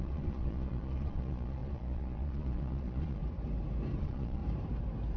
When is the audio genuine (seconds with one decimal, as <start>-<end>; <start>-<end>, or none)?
3.2-4.0; 4.4-5.2